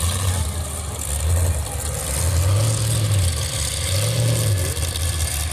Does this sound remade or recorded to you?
recorded